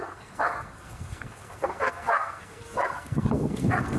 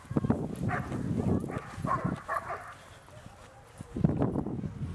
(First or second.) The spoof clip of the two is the first